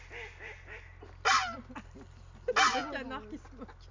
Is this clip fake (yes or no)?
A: no